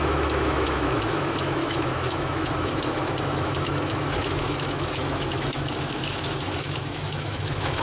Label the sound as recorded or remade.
remade